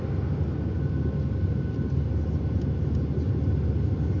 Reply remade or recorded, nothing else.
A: recorded